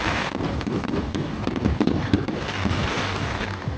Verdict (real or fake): fake